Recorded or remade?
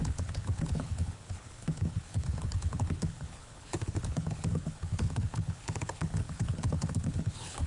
remade